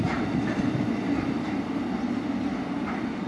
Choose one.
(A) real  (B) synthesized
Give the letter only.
A